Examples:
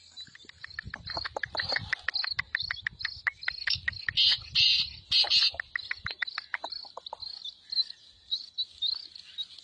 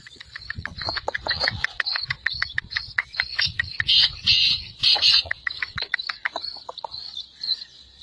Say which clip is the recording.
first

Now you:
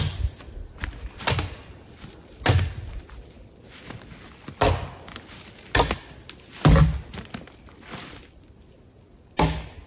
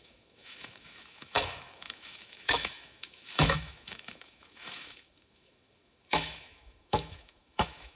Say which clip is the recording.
first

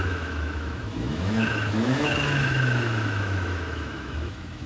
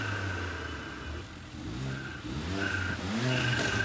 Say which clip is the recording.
second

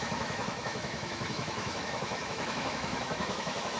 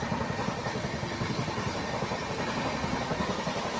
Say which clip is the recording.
second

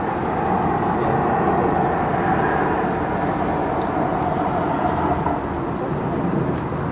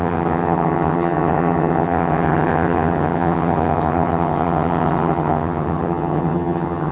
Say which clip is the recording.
first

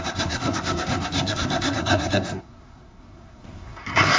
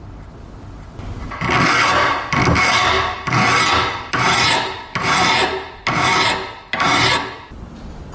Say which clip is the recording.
second